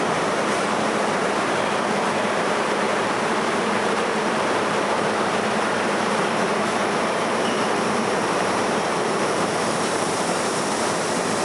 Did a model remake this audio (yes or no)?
yes